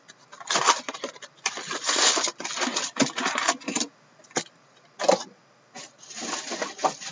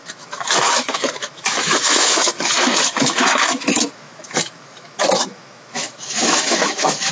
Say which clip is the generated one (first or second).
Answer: second